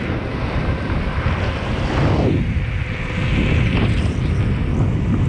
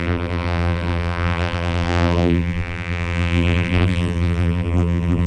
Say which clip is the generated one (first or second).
second